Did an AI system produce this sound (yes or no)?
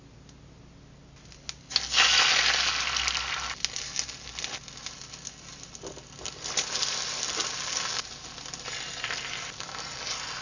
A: no